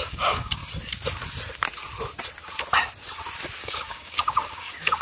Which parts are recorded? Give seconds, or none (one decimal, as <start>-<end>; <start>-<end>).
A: 0.6-3.6